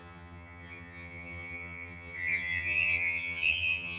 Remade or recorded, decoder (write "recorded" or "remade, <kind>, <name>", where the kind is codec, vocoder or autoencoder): remade, vocoder, HiFi-GAN